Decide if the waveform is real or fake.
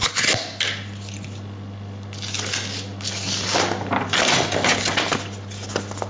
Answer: real